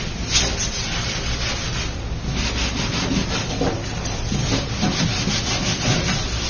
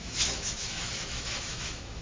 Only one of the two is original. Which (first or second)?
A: first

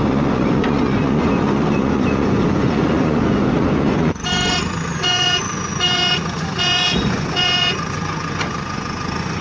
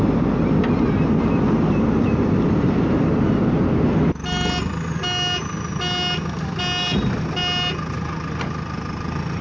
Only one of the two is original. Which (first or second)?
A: second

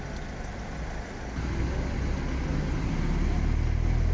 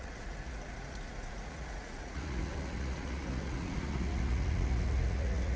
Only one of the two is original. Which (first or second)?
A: first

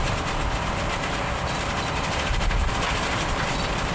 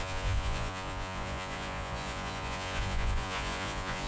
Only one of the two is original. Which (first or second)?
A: first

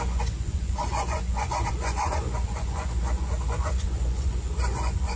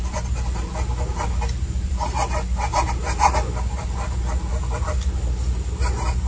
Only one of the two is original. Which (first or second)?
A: second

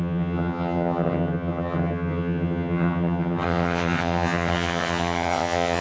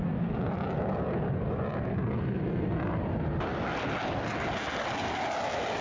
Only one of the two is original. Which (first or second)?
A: second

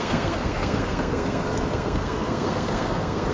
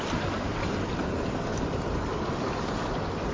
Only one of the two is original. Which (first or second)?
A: second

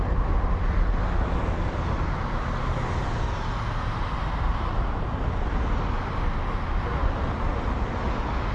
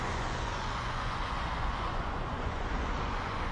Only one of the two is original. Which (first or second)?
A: first